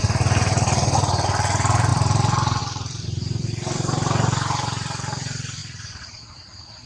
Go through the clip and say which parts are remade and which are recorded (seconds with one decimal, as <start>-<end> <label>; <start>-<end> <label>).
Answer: 0.0-6.9 remade